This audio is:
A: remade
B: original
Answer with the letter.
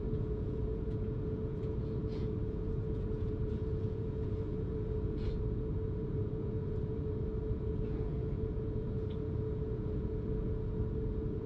A